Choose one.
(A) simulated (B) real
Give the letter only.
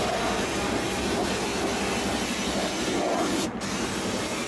B